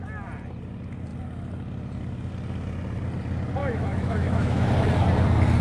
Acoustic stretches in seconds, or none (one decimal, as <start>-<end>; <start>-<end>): 0.0-3.6; 4.7-5.6